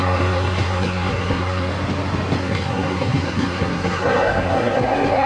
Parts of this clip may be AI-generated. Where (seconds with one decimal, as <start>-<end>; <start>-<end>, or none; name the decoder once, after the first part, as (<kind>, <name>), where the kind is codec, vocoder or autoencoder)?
0.0-1.7 (codec, SNAC); 2.4-5.3